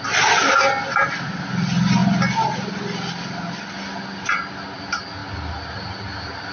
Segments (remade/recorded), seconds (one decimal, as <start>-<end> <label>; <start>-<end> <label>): 0.0-6.5 recorded